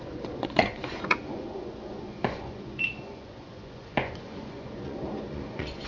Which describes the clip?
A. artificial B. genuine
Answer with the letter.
A